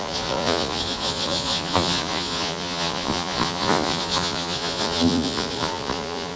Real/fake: fake